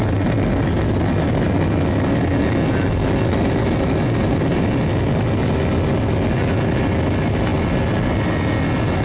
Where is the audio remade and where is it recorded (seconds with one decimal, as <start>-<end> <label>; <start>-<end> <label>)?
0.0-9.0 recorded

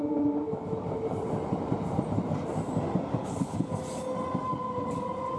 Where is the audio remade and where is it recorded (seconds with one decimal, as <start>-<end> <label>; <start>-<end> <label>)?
0.0-3.2 recorded; 3.2-3.7 remade; 3.7-5.4 recorded

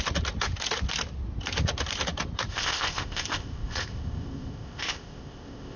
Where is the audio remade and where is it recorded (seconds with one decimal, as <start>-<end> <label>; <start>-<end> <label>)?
0.0-2.5 recorded; 2.5-5.8 remade

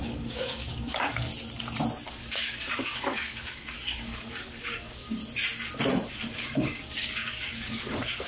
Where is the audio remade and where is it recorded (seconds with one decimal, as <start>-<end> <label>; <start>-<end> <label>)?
0.0-1.3 remade; 1.3-2.1 recorded; 2.1-5.2 remade; 5.2-6.1 recorded; 6.1-8.3 remade

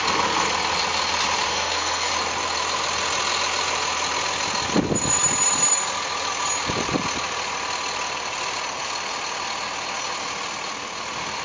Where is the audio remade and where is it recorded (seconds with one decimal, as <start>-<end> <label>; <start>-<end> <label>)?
0.0-1.5 recorded; 1.5-2.1 remade; 2.1-11.4 recorded

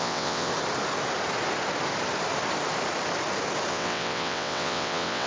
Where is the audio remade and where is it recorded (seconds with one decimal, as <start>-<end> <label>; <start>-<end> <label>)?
0.0-0.5 remade; 0.5-3.7 recorded; 3.7-5.3 remade